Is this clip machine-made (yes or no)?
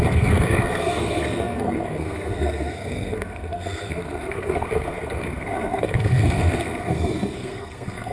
yes